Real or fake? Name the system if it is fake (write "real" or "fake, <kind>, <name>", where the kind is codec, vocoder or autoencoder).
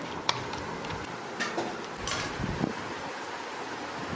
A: real